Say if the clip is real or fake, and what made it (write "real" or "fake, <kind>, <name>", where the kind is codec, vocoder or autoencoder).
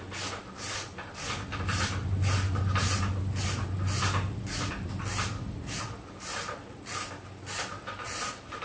real